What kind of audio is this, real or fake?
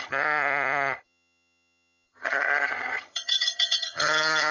fake